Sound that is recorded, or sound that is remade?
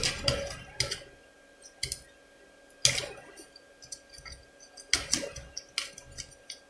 recorded